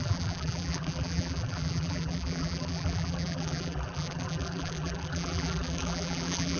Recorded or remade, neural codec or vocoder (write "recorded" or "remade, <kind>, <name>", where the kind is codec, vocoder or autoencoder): remade, vocoder, BigVGAN v2